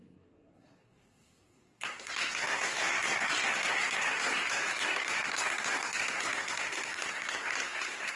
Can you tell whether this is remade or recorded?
remade